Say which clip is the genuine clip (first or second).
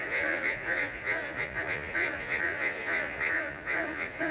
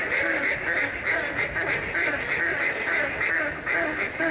second